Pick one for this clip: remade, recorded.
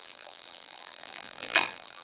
remade